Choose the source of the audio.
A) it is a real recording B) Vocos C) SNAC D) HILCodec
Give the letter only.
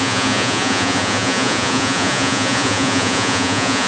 B